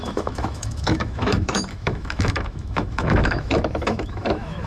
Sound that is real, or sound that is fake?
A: fake